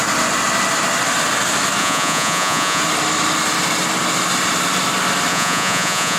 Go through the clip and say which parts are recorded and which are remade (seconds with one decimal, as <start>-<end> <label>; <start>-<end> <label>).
0.0-1.8 recorded; 1.8-2.8 remade; 2.8-5.3 recorded; 5.3-6.2 remade